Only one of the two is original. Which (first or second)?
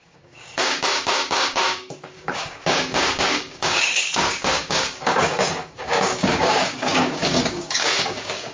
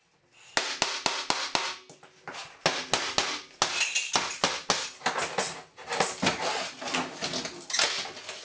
second